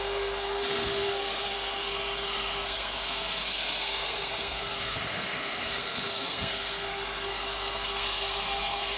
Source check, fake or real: fake